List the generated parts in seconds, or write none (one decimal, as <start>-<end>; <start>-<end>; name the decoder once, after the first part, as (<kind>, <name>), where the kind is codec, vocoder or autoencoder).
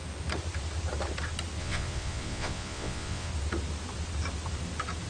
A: 1.6-3.3 (vocoder, Vocos)